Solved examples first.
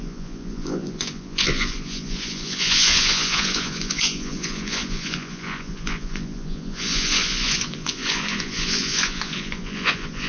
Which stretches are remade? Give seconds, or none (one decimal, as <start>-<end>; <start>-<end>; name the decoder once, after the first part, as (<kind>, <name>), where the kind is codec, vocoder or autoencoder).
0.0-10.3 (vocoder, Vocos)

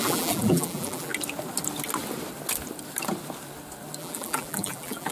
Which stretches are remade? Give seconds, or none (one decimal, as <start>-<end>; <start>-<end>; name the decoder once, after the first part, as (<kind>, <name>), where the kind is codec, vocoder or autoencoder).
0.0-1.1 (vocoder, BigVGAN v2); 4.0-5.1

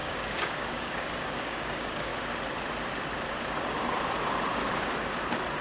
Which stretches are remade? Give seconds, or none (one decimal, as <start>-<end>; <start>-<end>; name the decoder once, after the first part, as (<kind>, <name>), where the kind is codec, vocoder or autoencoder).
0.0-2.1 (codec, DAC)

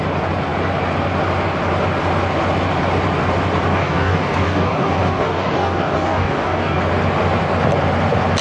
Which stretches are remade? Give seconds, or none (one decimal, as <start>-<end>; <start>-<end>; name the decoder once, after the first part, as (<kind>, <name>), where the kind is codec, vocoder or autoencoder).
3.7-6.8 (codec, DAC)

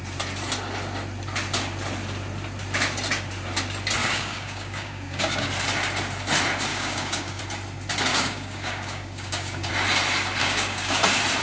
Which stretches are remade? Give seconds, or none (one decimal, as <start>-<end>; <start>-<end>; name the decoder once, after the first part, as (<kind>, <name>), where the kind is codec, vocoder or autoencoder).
4.0-5.5 (codec, DAC); 6.7-7.4; 8.1-9.7; 10.4-11.0

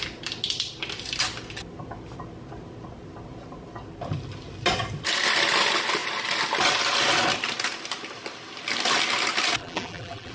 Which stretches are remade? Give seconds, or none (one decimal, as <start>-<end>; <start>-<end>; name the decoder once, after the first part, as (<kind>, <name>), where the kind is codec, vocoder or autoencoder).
9.6-10.3 (vocoder, BigVGAN v2)

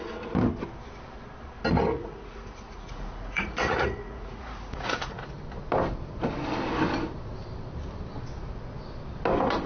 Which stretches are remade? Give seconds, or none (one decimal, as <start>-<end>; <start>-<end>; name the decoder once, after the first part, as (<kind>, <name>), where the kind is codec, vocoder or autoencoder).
1.9-5.3 (vocoder, Vocos)

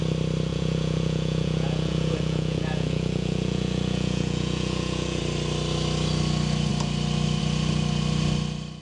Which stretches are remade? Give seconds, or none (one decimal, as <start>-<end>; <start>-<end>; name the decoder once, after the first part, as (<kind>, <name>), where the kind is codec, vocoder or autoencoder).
0.5-5.2 (vocoder, Vocos)